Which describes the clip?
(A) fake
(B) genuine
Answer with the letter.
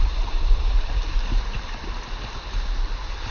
A